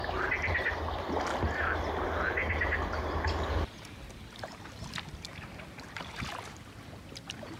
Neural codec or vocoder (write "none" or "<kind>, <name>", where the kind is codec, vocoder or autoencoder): none